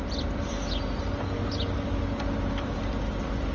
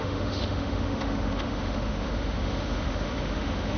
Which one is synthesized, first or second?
second